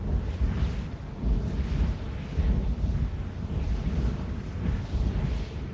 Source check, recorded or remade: recorded